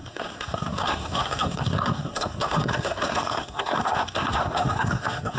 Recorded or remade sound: remade